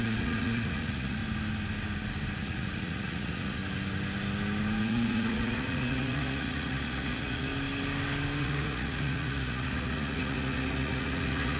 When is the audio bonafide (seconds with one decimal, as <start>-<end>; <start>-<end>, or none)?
1.2-2.4; 3.6-4.8; 7.5-8.4